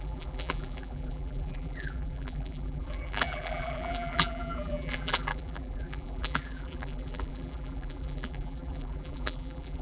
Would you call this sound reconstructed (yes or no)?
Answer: yes